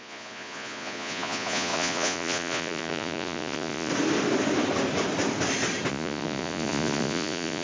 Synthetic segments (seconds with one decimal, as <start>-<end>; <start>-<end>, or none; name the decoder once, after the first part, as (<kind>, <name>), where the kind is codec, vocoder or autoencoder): 0.0-3.9 (vocoder, Vocos); 5.9-7.6